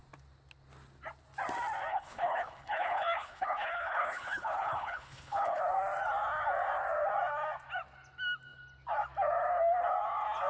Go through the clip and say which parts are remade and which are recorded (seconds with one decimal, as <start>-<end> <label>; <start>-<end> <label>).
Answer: 0.0-1.9 recorded; 1.9-5.6 remade; 5.6-10.5 recorded